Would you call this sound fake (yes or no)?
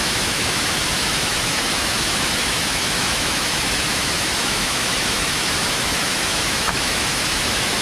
yes